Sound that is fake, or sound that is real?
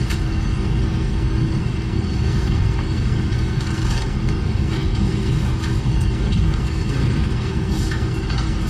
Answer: fake